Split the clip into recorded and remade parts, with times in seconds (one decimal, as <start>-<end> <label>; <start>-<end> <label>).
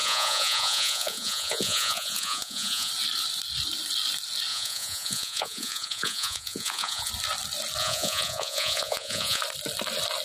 0.0-2.9 remade; 2.9-4.5 recorded; 4.5-7.1 remade; 7.1-7.8 recorded; 7.8-9.4 remade; 9.4-10.2 recorded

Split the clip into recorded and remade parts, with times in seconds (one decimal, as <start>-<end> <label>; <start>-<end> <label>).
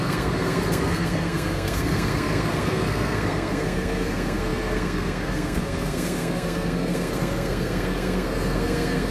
0.0-9.1 remade